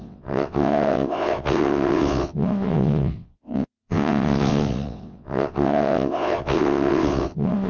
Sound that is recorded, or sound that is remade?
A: remade